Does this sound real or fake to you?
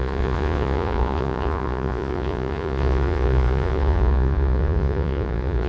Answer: fake